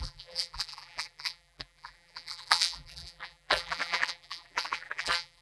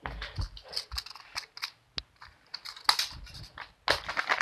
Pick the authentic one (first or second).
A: second